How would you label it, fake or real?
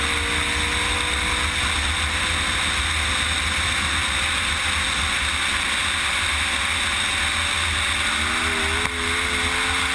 real